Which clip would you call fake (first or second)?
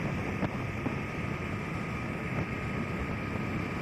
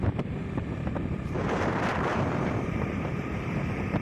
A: second